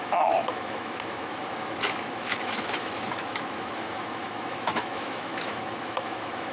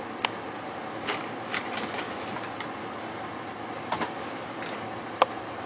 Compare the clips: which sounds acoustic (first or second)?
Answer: second